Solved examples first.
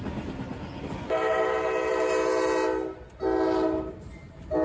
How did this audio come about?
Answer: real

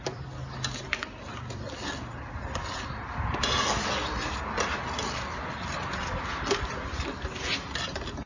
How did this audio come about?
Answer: real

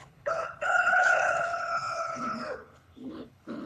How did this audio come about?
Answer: fake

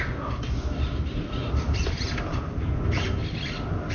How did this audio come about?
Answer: real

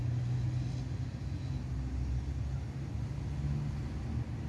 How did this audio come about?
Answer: real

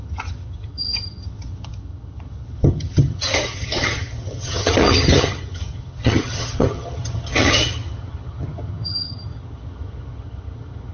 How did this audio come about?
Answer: fake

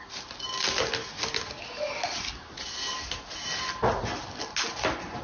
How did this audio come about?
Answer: real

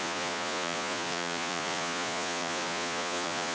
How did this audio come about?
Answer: fake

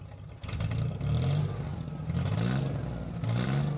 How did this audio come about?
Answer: real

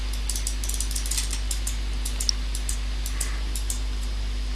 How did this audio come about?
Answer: real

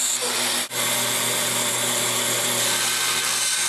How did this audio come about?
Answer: real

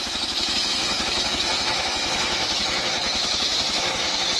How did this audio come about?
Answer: fake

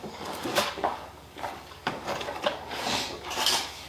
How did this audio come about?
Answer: fake